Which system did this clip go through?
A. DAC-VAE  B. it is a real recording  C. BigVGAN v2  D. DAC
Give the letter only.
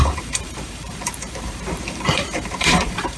C